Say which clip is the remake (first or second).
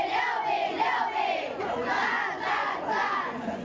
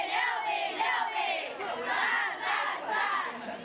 first